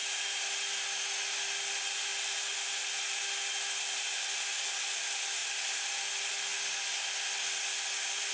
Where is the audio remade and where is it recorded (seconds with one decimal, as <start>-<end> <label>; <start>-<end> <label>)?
0.0-8.3 recorded